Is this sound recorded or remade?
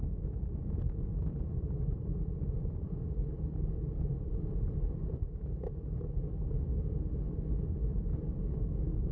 recorded